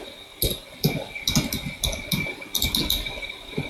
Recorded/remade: recorded